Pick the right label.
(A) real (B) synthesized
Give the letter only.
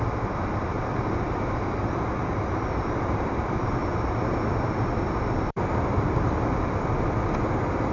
A